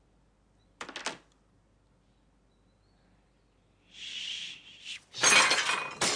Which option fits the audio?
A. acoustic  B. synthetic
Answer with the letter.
A